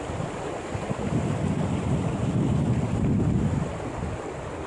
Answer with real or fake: real